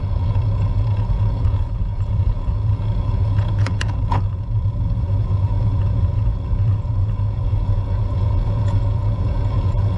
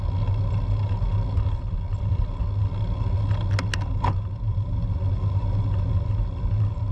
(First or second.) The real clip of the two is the second